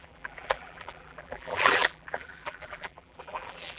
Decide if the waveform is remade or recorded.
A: remade